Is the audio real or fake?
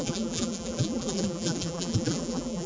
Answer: fake